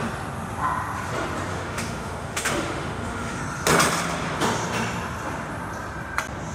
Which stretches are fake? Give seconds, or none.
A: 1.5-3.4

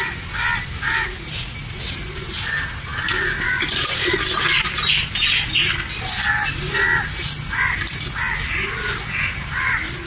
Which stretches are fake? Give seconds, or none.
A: none

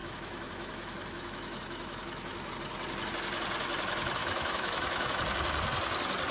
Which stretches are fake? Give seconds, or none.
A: 0.0-2.5; 4.2-5.2

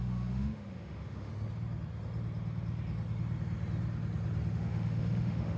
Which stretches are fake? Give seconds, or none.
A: 0.0-1.3; 4.5-5.6

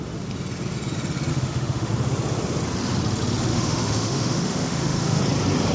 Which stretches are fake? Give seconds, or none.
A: 1.3-1.9; 3.5-5.2

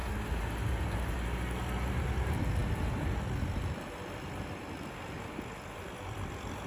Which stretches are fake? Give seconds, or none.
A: none